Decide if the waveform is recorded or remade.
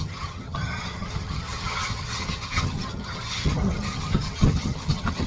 remade